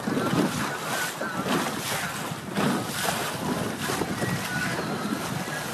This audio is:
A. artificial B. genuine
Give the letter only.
B